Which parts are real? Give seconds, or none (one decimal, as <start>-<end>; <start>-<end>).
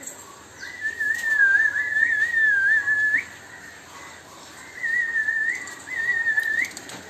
0.0-7.1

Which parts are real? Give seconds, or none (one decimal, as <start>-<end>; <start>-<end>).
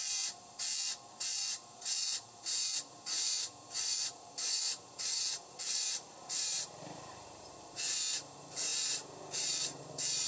none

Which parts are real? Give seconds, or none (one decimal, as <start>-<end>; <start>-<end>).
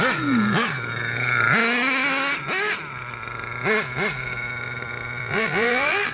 0.0-5.2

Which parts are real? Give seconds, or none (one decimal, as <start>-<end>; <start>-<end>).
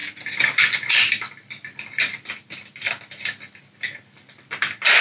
0.0-5.0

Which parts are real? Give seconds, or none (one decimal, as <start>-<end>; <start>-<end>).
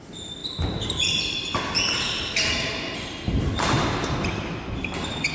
0.0-5.3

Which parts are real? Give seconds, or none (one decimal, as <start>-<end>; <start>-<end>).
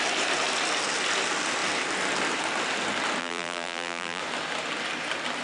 0.0-3.2; 4.2-5.4